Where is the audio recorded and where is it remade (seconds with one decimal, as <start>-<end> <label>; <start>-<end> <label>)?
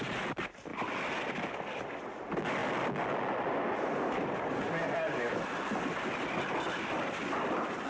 0.0-7.9 recorded